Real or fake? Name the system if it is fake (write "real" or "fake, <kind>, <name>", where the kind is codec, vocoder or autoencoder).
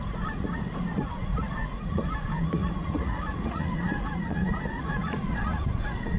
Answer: fake, vocoder, Vocos